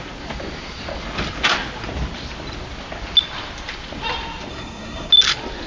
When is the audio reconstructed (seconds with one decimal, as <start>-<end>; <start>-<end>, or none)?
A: 4.5-5.1